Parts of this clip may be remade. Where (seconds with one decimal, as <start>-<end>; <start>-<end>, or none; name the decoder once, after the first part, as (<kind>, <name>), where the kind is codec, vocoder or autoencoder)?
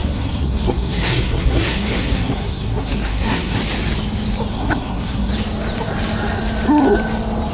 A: 0.0-3.6 (codec, SNAC); 4.5-5.3